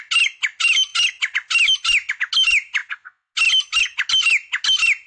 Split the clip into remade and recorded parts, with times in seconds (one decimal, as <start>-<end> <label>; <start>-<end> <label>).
0.0-2.8 recorded; 2.8-3.3 remade; 3.3-5.1 recorded